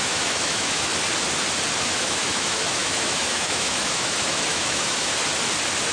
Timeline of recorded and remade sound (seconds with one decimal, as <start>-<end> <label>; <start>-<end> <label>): 0.0-0.9 remade; 0.9-1.8 recorded; 1.8-5.1 remade; 5.1-5.9 recorded